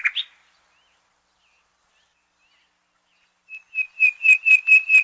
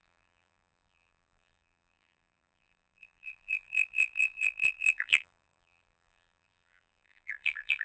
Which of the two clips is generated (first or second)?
second